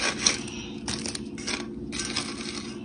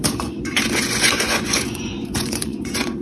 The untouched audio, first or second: first